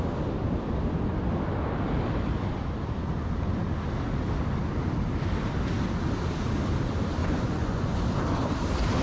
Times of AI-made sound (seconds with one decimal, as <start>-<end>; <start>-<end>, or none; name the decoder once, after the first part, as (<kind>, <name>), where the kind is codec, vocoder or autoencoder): 7.2-8.0 (vocoder, Vocos)